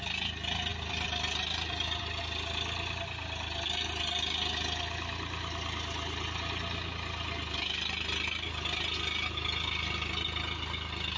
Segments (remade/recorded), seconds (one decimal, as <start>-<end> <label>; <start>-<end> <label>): 0.0-0.7 recorded; 0.7-2.2 remade; 2.2-11.2 recorded

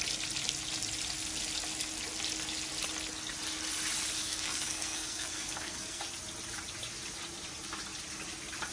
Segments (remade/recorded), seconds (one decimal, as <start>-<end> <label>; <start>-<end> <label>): 0.0-4.2 recorded; 4.2-6.0 remade; 6.0-8.7 recorded

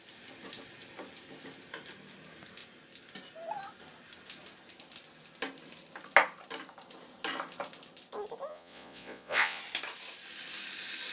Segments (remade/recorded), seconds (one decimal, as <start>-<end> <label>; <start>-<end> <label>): 0.0-8.5 recorded; 8.5-9.6 remade; 9.6-11.1 recorded

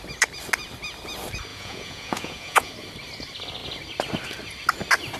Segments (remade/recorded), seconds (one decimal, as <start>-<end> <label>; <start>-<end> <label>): 0.0-1.5 recorded; 1.5-2.7 remade; 2.7-5.2 recorded